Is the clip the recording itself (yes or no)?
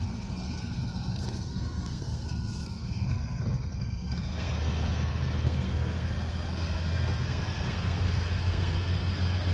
no